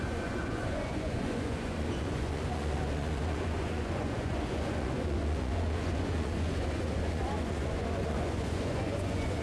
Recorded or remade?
remade